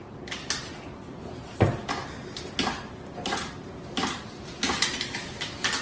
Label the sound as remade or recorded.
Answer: recorded